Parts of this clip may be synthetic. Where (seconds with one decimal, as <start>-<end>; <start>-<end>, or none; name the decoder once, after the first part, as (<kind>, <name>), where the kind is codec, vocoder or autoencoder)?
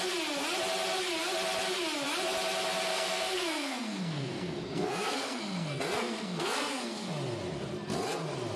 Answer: 2.9-7.1 (codec, SNAC)